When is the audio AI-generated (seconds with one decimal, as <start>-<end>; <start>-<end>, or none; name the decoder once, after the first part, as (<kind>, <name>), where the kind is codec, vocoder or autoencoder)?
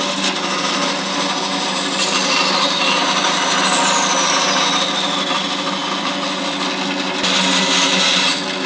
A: none